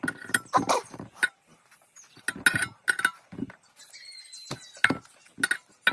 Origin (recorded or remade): recorded